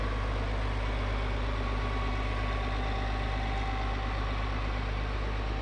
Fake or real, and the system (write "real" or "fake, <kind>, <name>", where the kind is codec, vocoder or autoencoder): real